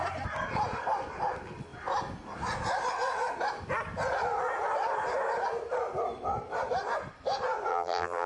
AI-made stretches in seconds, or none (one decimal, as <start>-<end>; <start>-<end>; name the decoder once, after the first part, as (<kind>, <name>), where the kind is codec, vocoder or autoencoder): 7.7-8.3 (vocoder, BigVGAN v2)